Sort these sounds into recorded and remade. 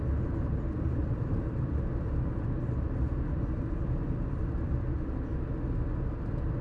recorded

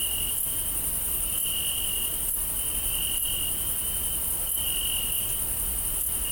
recorded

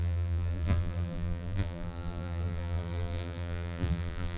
remade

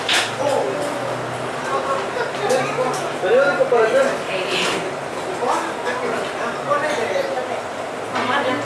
recorded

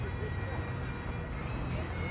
recorded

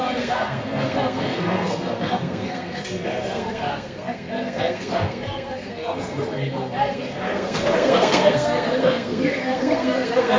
remade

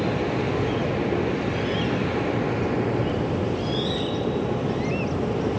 recorded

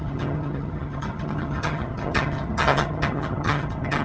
remade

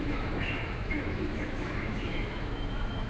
remade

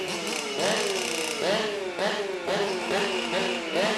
recorded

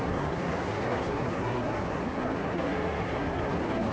remade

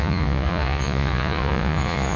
remade